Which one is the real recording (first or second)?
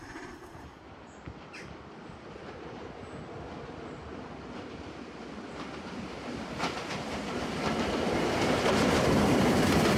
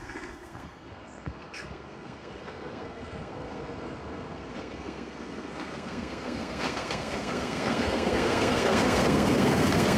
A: first